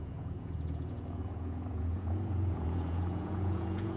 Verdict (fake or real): fake